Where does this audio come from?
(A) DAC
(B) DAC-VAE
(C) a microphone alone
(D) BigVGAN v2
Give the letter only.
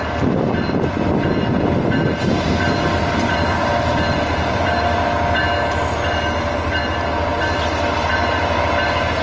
C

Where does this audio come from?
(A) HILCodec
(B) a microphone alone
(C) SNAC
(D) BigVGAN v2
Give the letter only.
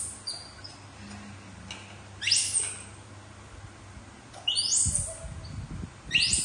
B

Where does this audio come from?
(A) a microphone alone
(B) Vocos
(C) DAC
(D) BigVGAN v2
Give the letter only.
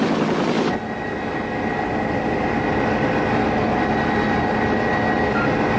A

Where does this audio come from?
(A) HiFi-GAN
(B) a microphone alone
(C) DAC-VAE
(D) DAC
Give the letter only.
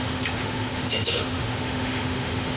C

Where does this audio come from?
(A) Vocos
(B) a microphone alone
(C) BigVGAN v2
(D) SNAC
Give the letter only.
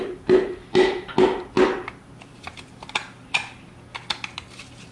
B